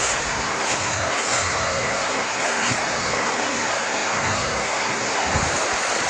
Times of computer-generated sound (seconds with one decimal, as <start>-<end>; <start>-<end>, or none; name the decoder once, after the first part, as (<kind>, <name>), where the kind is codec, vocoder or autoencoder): 0.0-5.4 (codec, SNAC)